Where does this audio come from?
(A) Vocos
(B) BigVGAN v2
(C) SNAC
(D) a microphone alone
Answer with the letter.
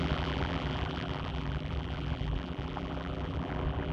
B